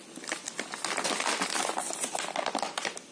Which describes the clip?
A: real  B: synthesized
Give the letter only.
A